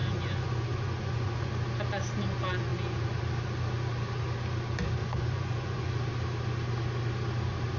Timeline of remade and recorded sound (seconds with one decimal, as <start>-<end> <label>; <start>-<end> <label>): 0.0-1.5 remade; 1.5-5.0 recorded; 5.0-5.9 remade; 5.9-7.8 recorded